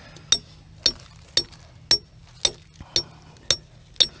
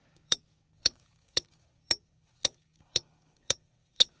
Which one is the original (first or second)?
first